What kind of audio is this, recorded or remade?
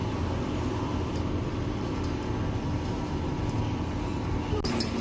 recorded